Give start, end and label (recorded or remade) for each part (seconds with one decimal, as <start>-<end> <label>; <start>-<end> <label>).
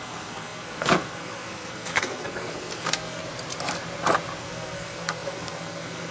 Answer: 0.0-3.2 remade; 3.2-4.4 recorded; 4.4-6.1 remade